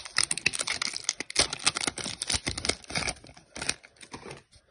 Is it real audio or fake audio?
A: real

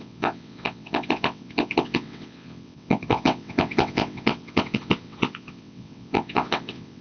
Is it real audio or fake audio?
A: fake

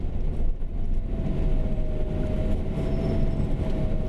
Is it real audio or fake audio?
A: real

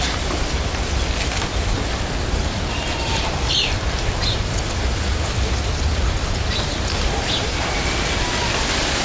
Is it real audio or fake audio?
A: real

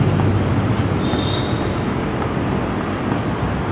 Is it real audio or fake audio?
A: real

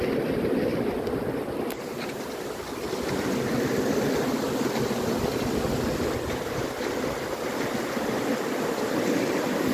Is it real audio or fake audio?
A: real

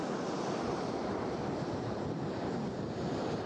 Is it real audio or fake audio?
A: real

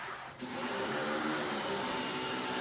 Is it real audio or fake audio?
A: fake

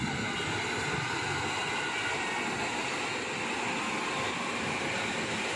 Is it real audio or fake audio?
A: real